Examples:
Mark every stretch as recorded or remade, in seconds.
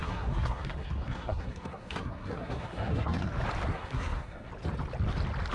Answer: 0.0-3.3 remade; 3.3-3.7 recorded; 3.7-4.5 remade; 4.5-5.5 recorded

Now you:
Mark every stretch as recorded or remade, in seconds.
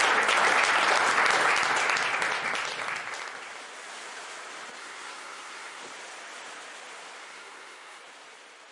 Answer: 0.0-4.8 recorded; 4.8-5.8 remade; 5.8-7.2 recorded; 7.2-8.0 remade; 8.0-8.7 recorded